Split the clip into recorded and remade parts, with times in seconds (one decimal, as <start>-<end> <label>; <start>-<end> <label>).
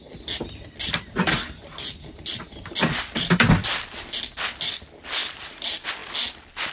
0.0-6.7 recorded